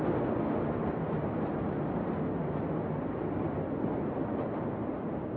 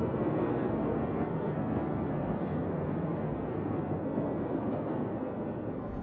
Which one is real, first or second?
first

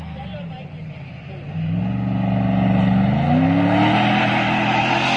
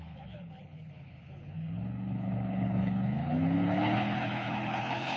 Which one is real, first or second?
first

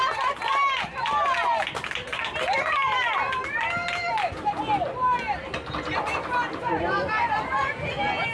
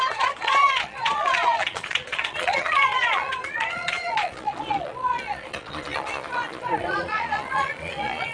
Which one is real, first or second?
first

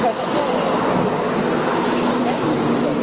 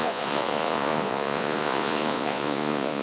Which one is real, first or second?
first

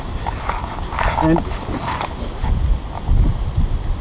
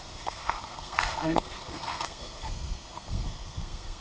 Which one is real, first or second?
first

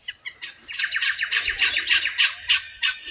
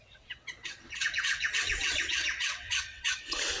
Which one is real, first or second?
first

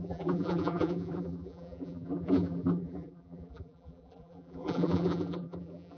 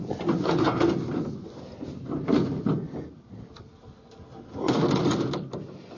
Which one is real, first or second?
second